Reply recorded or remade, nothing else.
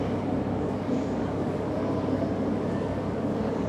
remade